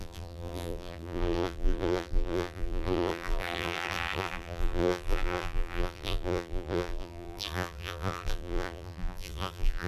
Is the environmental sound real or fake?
fake